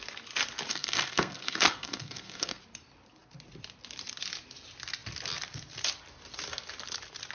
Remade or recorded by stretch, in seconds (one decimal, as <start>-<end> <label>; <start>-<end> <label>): 0.0-0.7 recorded; 0.7-2.6 remade; 2.6-7.3 recorded